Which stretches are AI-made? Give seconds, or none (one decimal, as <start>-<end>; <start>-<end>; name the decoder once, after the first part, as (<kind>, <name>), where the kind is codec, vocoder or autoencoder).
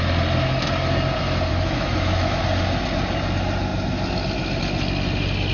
1.5-2.4 (autoencoder, DAC-VAE)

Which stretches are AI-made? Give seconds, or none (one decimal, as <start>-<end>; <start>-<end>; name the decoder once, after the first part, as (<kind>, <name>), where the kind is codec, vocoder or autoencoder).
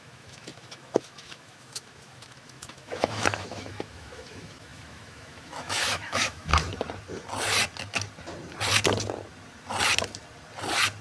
0.0-6.5 (autoencoder, DAC-VAE)